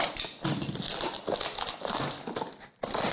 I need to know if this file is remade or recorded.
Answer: recorded